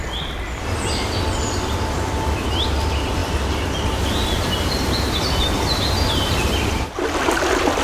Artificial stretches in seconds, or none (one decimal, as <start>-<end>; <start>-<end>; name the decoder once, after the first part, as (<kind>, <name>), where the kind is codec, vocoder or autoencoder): none